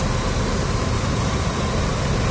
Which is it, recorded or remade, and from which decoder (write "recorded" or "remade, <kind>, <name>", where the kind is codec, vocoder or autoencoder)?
recorded